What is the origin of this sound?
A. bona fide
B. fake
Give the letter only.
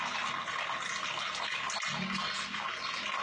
A